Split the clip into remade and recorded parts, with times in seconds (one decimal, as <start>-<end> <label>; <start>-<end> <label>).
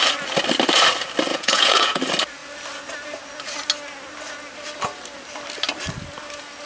0.0-1.3 recorded; 1.3-2.0 remade; 2.0-6.7 recorded